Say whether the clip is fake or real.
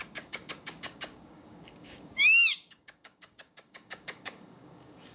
fake